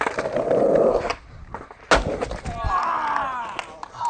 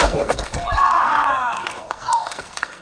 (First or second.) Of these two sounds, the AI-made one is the second